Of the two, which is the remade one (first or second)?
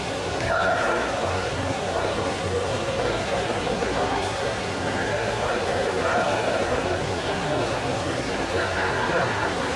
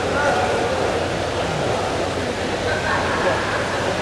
first